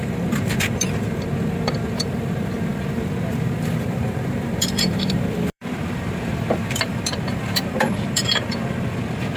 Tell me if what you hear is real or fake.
fake